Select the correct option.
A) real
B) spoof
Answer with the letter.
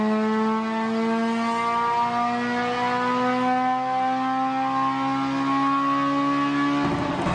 A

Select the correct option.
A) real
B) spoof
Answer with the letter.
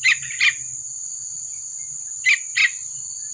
A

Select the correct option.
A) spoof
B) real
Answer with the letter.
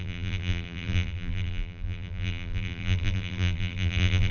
A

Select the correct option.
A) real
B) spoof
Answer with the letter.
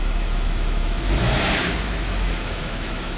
B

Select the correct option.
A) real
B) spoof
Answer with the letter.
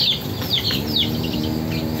A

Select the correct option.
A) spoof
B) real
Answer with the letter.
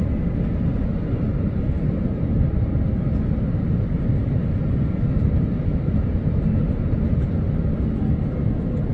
B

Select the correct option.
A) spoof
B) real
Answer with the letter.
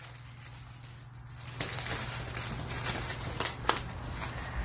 B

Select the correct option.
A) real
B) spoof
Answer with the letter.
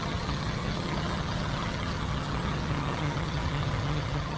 B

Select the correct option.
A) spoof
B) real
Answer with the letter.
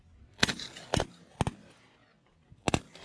B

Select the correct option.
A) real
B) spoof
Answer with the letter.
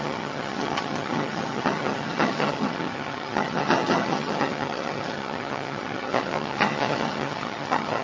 B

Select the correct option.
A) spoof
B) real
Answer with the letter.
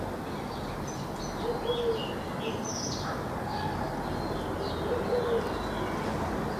B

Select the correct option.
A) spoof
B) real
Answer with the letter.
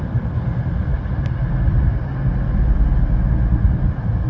B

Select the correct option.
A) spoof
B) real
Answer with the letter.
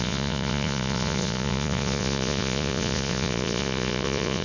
A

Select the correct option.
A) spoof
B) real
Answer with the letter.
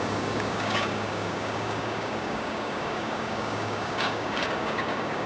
A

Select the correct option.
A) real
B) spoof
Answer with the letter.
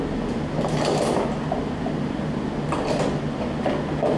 A